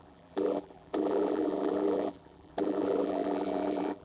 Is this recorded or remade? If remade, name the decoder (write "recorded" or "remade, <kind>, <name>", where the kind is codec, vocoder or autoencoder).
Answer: remade, vocoder, BigVGAN v2